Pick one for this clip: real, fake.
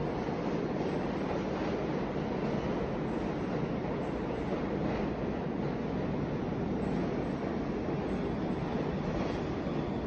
real